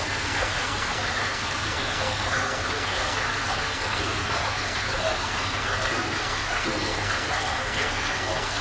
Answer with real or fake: fake